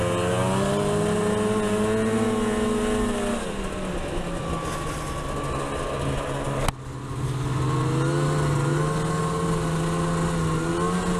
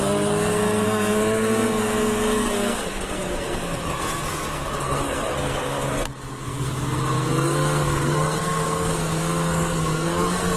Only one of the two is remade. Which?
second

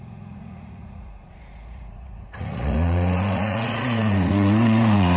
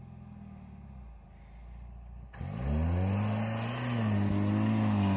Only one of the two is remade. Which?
first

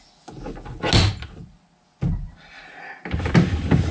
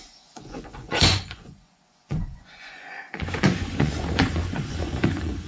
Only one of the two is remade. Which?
second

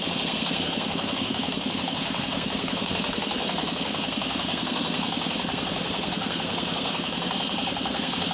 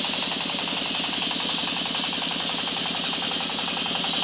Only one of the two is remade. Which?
first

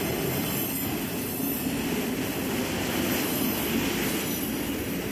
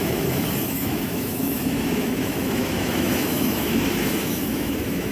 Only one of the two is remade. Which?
second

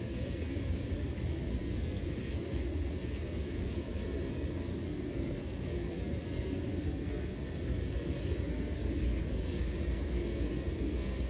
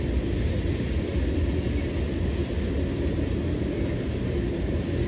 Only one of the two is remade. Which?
first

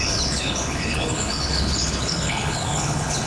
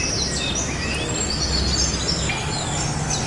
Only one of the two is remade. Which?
first